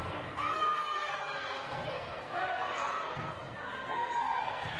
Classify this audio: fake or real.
fake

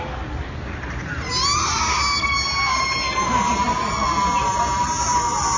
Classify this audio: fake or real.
real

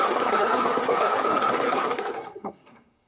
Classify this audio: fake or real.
fake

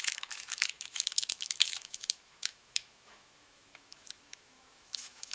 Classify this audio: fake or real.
fake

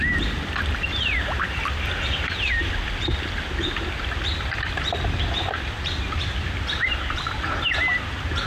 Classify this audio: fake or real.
real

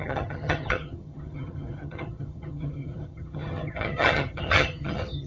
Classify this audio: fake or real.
fake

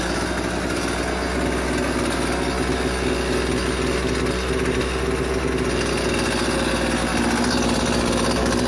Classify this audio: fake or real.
real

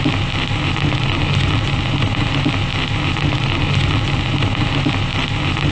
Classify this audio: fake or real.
real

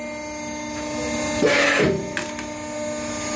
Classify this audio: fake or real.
real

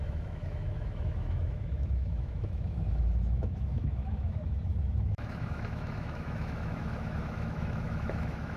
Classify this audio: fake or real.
fake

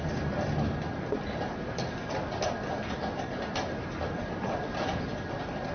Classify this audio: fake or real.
real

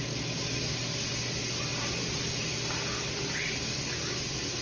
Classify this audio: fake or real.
real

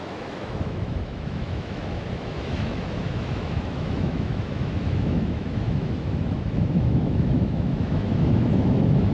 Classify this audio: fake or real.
fake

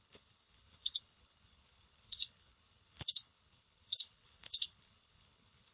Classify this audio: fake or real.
fake